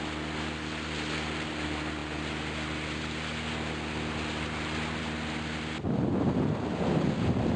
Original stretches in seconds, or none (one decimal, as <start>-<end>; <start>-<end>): 0.0-7.6

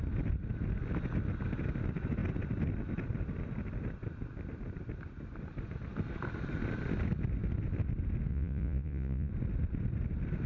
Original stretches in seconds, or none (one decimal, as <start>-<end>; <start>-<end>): 0.0-8.3; 9.3-10.5

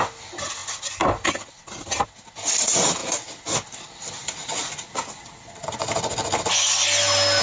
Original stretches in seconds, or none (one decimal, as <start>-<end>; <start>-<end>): 0.0-7.4

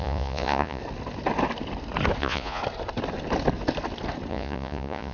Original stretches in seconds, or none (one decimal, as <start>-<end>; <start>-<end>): 0.8-2.2; 2.6-4.3

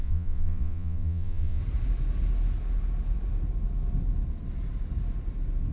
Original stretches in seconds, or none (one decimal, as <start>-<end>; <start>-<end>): 1.6-5.7